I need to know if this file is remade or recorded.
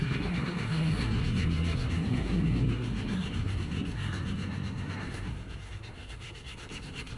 remade